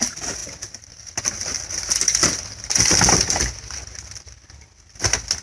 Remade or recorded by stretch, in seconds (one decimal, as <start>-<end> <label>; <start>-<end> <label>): 0.0-5.4 recorded